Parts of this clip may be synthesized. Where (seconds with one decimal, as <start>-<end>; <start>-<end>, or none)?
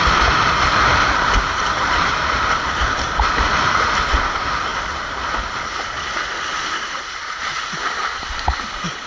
0.9-2.9